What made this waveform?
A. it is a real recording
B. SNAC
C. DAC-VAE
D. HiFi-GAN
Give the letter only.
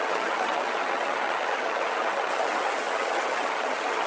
D